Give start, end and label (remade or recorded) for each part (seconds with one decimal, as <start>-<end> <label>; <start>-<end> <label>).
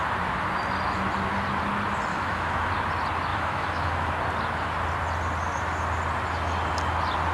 0.0-2.1 recorded; 2.1-2.7 remade; 2.7-3.3 recorded; 3.3-4.1 remade; 4.1-7.3 recorded